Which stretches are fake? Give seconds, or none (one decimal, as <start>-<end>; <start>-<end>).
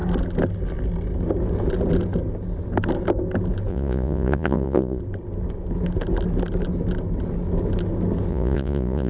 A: 3.7-5.0; 8.3-9.1